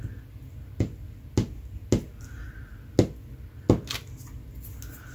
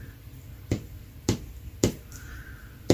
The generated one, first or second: second